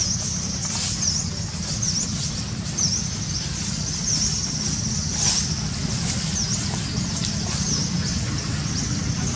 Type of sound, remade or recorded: recorded